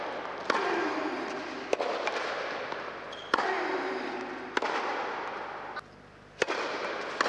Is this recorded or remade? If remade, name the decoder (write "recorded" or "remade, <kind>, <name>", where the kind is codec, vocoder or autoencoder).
recorded